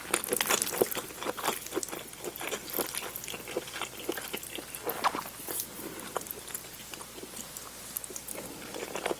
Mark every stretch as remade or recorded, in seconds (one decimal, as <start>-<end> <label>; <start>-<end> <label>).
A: 0.0-9.2 recorded

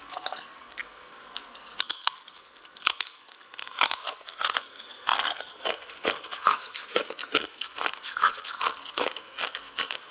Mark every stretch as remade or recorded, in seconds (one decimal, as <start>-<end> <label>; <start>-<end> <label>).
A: 0.0-10.1 remade

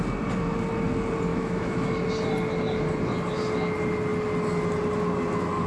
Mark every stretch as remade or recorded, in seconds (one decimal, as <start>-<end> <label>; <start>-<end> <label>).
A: 0.0-1.3 recorded; 1.3-2.1 remade; 2.1-5.7 recorded

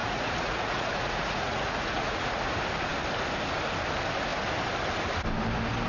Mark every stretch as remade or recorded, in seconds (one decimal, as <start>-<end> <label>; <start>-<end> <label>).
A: 0.0-2.5 remade; 2.5-5.9 recorded

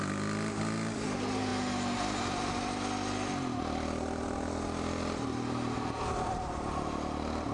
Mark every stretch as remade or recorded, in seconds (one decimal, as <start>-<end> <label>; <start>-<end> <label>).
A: 0.0-7.5 recorded

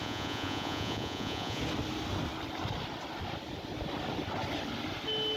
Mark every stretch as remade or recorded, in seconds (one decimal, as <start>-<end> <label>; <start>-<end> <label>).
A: 0.0-1.6 remade; 1.6-5.4 recorded

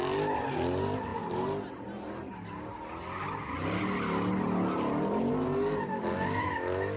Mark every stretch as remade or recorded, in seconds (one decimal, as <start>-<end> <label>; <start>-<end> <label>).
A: 0.0-7.0 recorded